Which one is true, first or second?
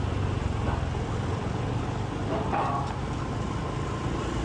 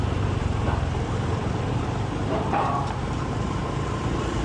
first